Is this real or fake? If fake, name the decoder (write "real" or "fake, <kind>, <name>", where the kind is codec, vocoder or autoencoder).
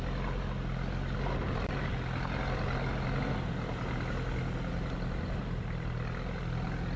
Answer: real